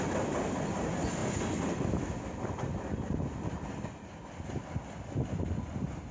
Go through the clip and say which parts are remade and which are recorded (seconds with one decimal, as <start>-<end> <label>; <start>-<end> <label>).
0.0-6.1 recorded